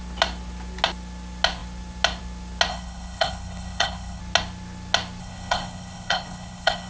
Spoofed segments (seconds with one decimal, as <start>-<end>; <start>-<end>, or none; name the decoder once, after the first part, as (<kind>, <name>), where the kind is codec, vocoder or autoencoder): 2.7-4.2 (codec, HILCodec); 5.2-6.9